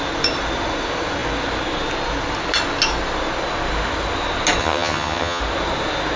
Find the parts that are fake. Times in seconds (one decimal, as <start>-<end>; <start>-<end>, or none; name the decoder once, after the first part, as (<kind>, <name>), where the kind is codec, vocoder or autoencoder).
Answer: 4.6-5.4 (vocoder, HiFi-GAN)